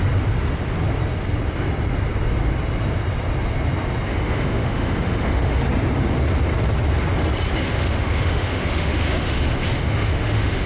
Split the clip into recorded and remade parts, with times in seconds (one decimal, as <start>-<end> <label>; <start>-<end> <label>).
0.0-4.1 recorded; 4.1-5.6 remade; 5.6-7.6 recorded; 7.6-10.7 remade